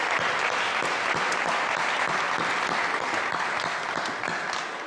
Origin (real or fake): real